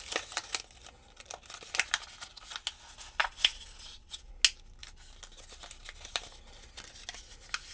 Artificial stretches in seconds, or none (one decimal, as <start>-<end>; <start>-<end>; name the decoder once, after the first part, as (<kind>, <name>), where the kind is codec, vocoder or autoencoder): 3.2-4.4 (vocoder, Vocos)